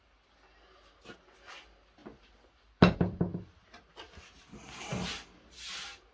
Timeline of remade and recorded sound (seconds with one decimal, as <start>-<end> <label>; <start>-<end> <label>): 0.0-6.1 recorded